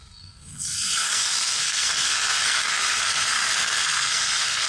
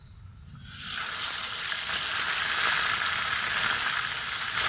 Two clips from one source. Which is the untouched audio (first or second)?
second